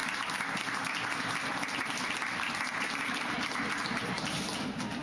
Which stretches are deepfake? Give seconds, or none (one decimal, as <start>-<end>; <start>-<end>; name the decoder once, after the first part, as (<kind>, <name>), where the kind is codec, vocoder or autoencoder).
none